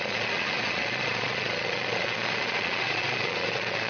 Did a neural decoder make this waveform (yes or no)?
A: yes